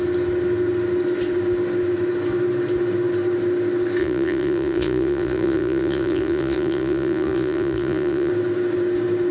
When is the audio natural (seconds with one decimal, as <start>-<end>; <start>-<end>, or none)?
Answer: 0.0-4.0; 8.3-9.3